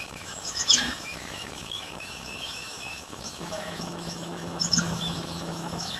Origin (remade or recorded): remade